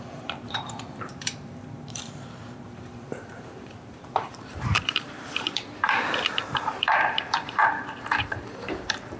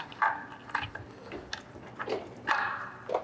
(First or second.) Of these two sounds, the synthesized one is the first